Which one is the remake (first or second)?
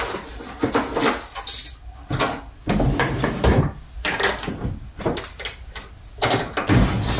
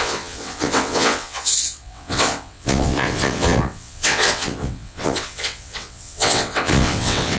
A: second